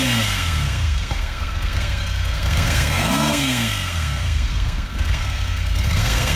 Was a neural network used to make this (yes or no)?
yes